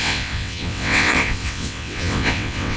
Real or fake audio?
fake